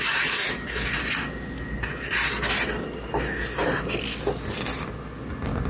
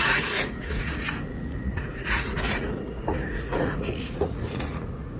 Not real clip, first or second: second